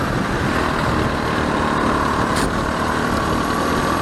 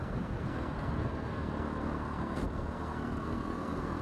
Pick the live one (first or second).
first